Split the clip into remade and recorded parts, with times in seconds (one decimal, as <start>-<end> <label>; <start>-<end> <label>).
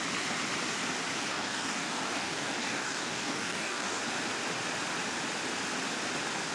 0.0-1.3 recorded; 1.3-4.0 remade; 4.0-6.5 recorded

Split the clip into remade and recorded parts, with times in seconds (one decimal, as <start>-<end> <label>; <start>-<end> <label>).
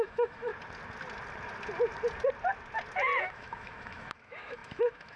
0.0-0.5 remade; 0.5-3.2 recorded; 3.2-5.2 remade